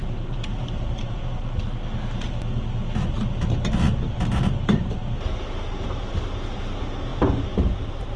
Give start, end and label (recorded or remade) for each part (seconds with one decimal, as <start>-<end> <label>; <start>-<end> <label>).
0.0-1.2 remade; 1.2-4.1 recorded; 4.1-5.0 remade; 5.0-5.7 recorded; 5.7-8.2 remade